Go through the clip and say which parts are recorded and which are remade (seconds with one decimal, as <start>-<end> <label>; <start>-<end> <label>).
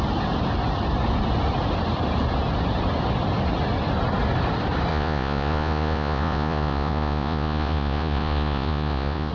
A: 0.0-4.9 recorded; 4.9-9.3 remade